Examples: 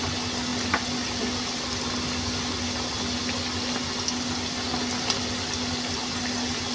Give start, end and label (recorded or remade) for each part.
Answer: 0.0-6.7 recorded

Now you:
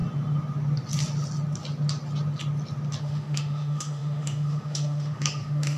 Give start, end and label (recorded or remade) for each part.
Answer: 0.0-3.0 recorded; 3.0-5.8 remade

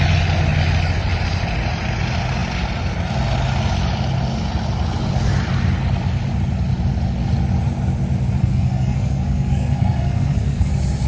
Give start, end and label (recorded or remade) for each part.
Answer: 0.0-8.4 recorded; 8.4-10.7 remade; 10.7-11.1 recorded

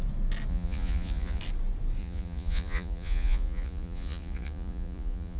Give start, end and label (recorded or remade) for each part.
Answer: 0.0-0.5 recorded; 0.5-1.4 remade; 1.4-2.0 recorded; 2.0-5.4 remade

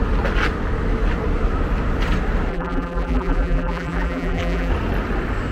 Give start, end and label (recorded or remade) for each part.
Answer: 0.0-2.5 recorded; 2.5-4.7 remade; 4.7-5.5 recorded

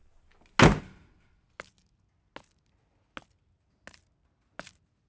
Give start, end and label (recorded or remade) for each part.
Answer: 0.0-5.1 recorded

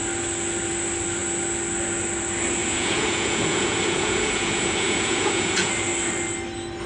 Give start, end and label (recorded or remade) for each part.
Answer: 0.0-2.6 recorded; 2.6-5.7 remade; 5.7-6.9 recorded